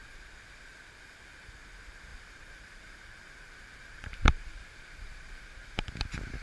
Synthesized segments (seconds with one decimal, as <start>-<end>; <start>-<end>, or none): 2.1-5.9